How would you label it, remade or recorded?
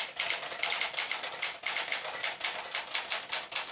recorded